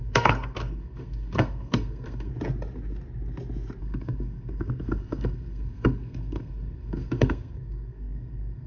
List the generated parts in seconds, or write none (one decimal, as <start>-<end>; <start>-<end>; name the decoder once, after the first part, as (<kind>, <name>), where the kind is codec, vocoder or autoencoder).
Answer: 0.0-2.3 (codec, SNAC); 3.8-8.7